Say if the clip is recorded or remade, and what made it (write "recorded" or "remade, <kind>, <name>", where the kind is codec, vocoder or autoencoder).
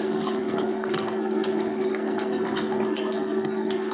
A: remade, codec, SNAC